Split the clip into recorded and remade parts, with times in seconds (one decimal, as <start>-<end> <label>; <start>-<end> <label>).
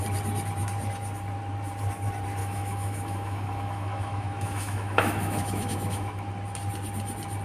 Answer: 0.0-2.4 recorded; 2.4-6.3 remade; 6.3-7.4 recorded